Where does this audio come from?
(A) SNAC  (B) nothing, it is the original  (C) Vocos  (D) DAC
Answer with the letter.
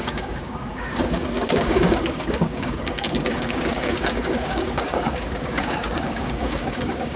D